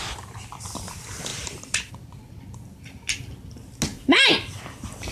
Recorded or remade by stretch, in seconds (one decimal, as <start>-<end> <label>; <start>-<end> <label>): 0.0-1.3 recorded; 1.3-1.9 remade; 1.9-3.9 recorded; 3.9-4.5 remade; 4.5-5.1 recorded